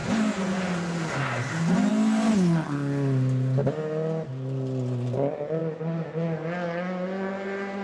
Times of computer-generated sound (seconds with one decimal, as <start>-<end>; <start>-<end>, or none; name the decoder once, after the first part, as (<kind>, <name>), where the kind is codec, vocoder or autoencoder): none